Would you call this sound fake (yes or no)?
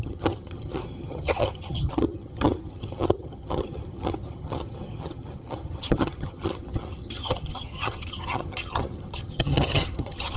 yes